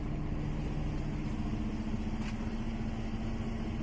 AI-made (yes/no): no